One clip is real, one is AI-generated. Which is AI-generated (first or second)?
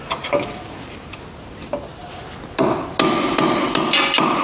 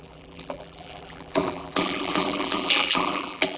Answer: second